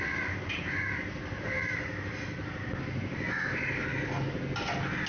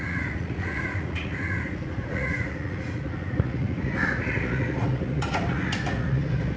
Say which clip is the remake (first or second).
second